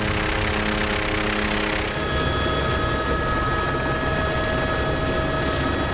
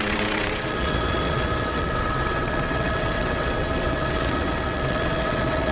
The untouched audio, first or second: first